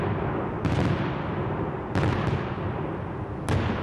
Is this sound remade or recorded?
recorded